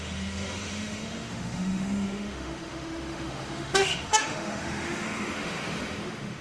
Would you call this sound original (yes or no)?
no